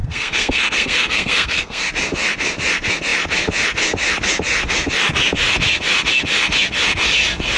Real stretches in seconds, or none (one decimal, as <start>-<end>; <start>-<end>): 1.9-7.6

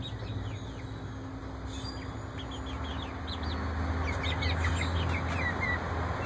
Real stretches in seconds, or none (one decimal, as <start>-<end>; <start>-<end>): 0.0-6.3

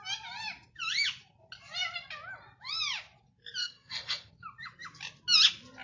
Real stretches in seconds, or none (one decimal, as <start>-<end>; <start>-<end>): 0.0-3.6; 4.3-5.8